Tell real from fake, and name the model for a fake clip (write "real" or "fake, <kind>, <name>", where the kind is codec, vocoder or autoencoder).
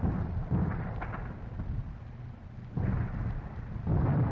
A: real